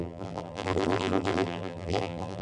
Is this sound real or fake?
fake